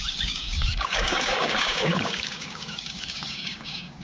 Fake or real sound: fake